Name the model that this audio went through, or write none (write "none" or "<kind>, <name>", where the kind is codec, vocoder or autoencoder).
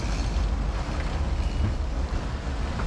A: none